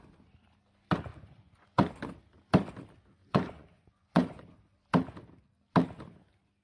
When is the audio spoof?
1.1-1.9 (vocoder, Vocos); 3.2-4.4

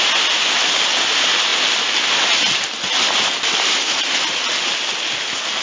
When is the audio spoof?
none

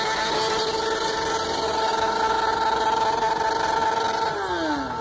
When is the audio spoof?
none

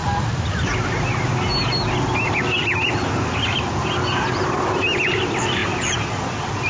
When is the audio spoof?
none

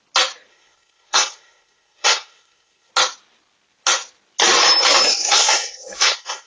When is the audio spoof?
0.5-2.9 (codec, SNAC); 5.1-6.5